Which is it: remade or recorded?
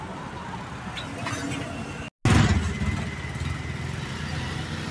recorded